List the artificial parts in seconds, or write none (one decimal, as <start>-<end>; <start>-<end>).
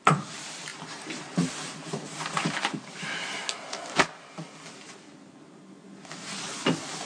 0.0-3.4